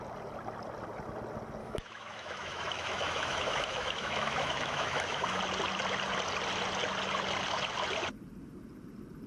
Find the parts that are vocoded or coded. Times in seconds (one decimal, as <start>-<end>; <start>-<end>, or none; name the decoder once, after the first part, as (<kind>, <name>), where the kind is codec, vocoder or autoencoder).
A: 1.6-5.4 (autoencoder, DAC-VAE)